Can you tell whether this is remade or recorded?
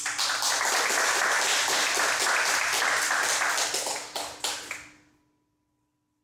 recorded